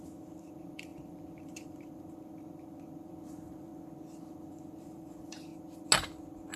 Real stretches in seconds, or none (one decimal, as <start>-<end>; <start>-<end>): 3.7-4.2; 5.5-6.6